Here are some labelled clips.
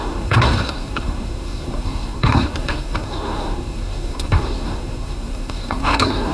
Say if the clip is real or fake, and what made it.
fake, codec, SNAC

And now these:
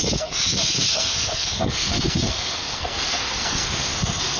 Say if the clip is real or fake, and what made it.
fake, codec, SNAC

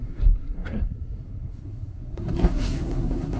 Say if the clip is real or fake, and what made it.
fake, codec, SNAC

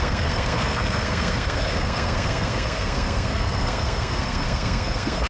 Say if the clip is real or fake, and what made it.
fake, codec, SNAC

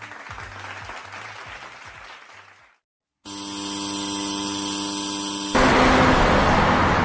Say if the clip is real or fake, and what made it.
real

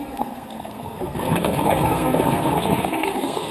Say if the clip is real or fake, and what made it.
fake, codec, SNAC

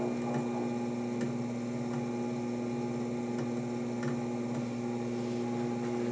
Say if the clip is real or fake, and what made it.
real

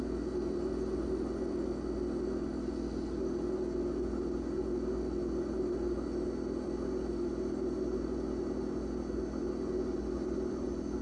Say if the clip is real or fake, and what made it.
real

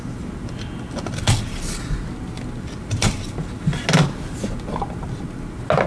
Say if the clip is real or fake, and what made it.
real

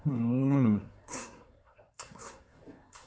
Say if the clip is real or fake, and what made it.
fake, codec, SNAC